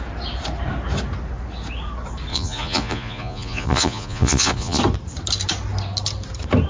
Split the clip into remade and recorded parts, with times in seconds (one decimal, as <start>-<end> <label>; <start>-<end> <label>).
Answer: 0.0-2.3 recorded; 2.3-4.8 remade; 4.8-6.7 recorded